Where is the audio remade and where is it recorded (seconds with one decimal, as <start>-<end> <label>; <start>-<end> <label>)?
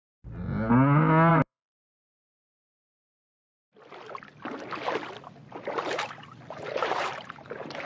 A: 0.0-1.3 recorded; 1.3-3.4 remade; 3.4-5.4 recorded; 5.4-7.9 remade